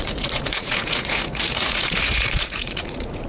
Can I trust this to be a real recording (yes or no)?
no